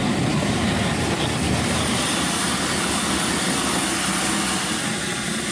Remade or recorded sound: recorded